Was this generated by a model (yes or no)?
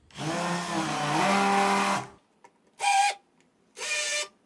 no